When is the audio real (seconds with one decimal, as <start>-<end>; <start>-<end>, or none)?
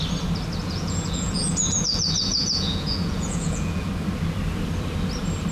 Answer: 0.0-0.6; 3.9-5.5